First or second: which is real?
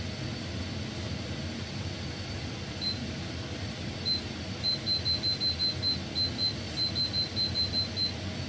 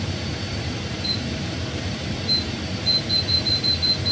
first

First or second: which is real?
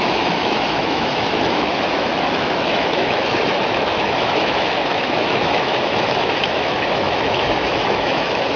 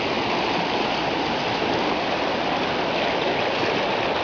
second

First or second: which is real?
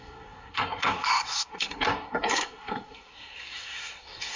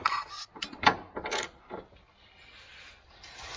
second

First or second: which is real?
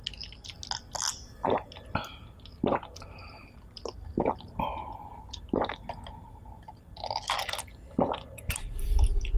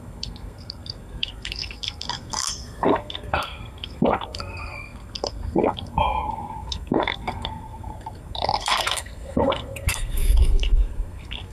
first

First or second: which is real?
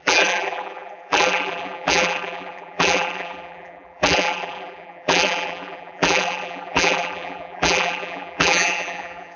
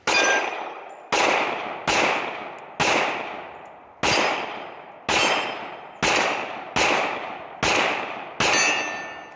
second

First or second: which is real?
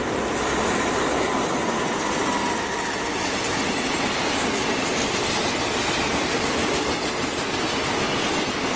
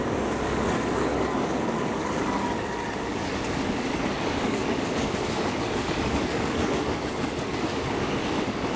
first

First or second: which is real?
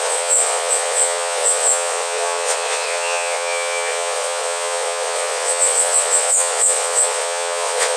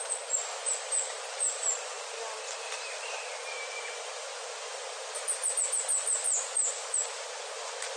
second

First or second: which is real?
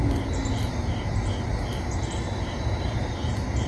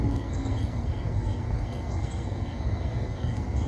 first